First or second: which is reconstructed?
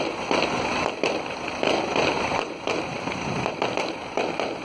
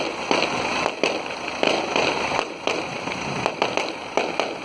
first